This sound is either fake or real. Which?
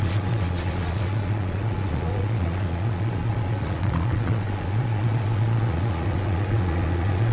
fake